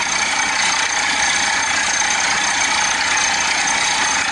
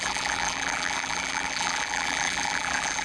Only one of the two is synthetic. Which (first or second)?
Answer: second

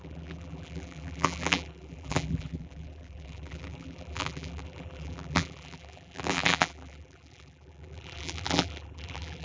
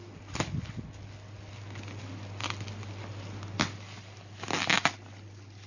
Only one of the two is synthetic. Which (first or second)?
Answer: first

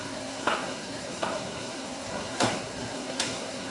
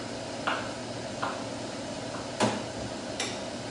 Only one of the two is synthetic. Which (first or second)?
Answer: first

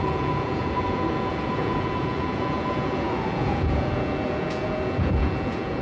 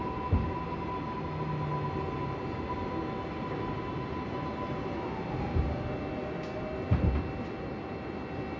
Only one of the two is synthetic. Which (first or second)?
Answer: first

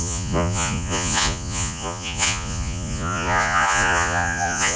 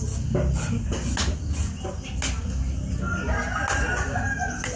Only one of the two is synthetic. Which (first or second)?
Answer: first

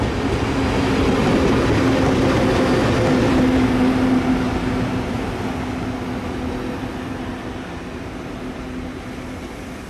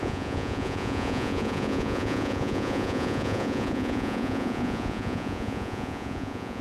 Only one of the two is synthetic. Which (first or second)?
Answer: second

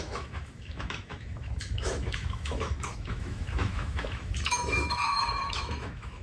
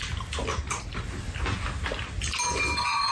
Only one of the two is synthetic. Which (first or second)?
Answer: first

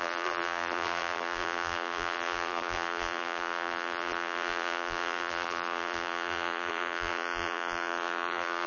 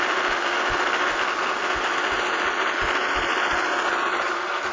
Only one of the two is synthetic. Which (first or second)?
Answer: first